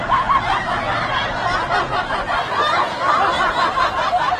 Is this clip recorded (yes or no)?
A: yes